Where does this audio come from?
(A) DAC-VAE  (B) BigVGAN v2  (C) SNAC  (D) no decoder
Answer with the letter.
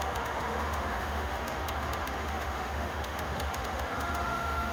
A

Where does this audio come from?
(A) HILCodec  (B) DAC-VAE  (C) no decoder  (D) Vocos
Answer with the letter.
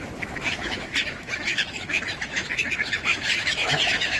B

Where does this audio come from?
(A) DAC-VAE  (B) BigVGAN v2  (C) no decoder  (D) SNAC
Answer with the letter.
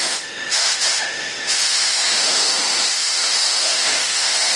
A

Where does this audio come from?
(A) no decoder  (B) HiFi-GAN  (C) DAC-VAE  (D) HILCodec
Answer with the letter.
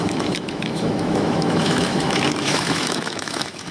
C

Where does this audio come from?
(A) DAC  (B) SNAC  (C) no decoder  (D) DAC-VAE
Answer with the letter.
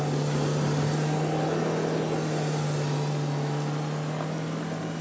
C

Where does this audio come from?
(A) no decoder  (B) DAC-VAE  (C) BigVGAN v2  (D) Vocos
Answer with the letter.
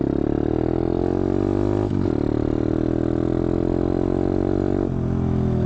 A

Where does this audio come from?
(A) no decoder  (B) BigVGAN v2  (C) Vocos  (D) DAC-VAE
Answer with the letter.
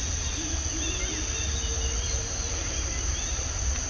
A